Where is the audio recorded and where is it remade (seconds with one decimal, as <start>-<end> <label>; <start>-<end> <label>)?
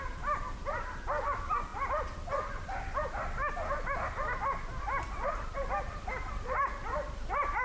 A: 0.0-7.6 recorded